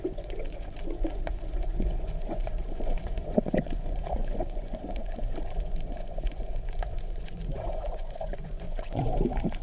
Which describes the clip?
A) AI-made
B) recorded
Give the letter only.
A